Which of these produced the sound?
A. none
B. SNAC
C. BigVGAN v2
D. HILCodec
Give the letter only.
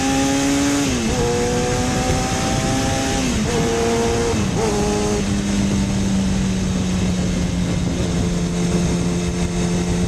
A